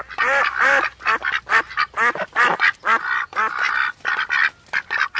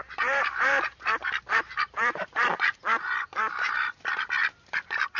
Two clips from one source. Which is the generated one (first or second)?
second